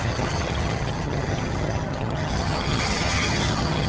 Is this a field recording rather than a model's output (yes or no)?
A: no